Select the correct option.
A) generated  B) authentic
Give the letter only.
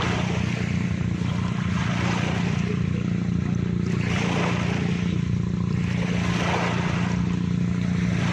B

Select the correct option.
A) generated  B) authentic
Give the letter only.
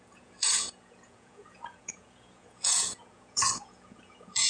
A